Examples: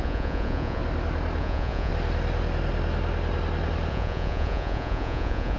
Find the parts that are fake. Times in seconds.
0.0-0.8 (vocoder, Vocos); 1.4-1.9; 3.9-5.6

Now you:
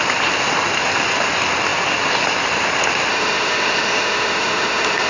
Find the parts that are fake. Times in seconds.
3.1-5.1 (autoencoder, DAC-VAE)

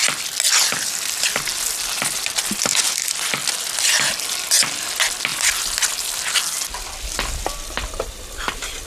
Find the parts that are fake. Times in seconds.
none

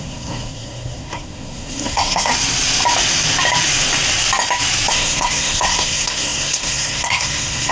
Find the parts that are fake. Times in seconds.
0.0-2.3 (codec, SNAC); 4.9-7.7

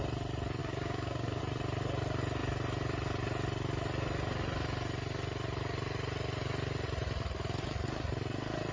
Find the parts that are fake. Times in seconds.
0.6-1.4 (codec, DAC)

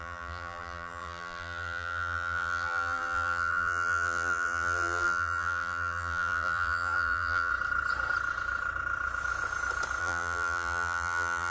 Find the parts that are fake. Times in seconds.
0.0-7.5 (vocoder, BigVGAN v2); 10.0-11.5

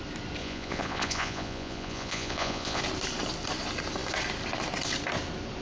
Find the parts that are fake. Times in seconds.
0.4-2.8 (vocoder, Vocos)